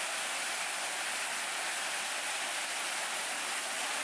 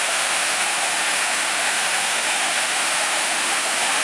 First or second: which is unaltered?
first